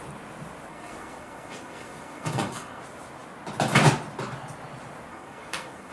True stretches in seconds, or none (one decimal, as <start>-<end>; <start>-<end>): 0.0-0.7; 2.8-5.1